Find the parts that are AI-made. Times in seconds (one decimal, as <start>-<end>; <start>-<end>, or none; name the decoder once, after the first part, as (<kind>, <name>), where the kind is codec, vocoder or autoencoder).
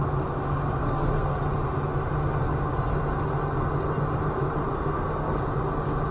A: 0.8-1.4 (codec, SNAC); 4.8-5.4